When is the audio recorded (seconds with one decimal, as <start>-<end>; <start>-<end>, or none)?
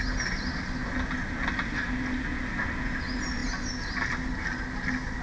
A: 0.0-5.2